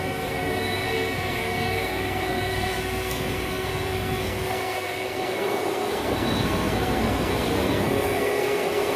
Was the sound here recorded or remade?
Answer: remade